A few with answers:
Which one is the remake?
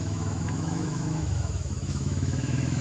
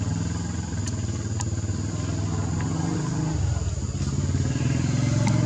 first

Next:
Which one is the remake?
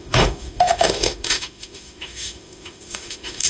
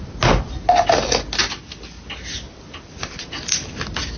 first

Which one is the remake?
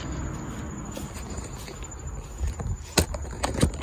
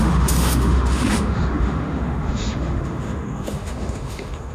second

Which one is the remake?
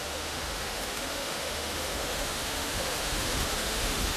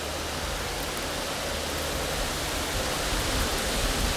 first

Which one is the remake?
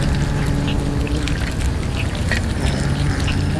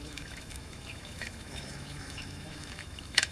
second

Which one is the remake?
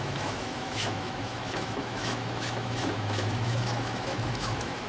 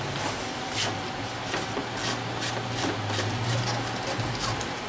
first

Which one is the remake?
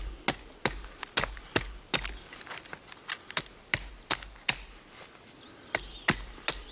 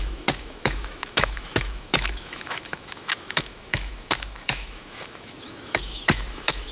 second